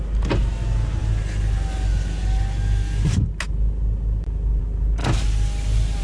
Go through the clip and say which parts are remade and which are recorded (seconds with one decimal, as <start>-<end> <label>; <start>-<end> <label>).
0.0-6.0 recorded